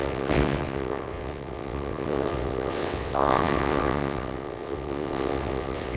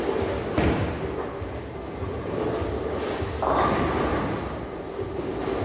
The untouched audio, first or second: second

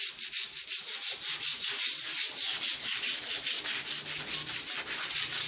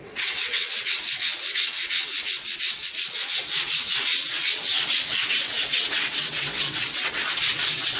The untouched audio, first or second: first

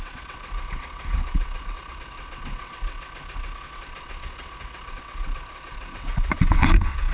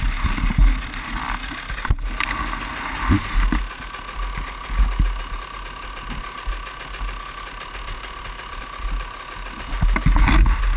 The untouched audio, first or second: second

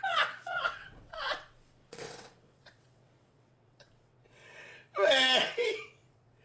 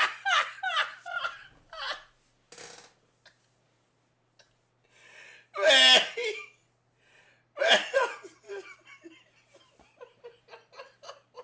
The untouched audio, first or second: second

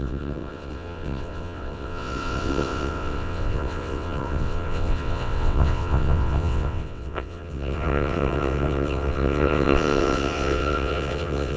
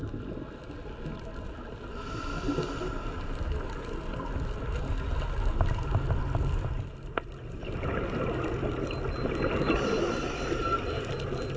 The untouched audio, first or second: second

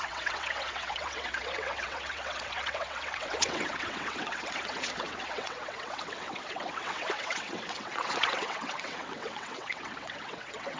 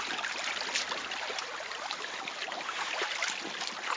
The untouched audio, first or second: second